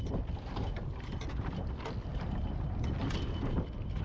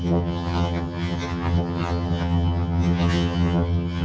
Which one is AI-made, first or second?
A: second